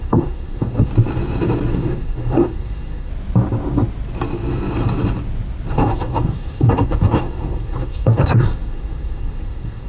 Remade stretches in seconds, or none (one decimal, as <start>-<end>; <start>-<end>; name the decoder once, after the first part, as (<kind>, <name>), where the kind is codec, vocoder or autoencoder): 0.0-0.9 (codec, SNAC); 1.7-3.1; 5.7-9.9